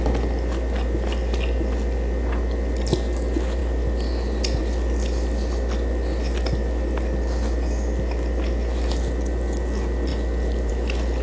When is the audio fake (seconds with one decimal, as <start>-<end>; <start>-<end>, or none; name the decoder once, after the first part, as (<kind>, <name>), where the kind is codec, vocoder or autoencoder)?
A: none